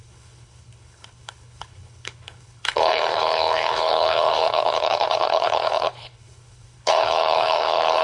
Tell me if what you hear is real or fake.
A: fake